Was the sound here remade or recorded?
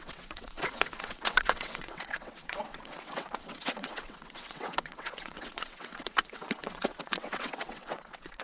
remade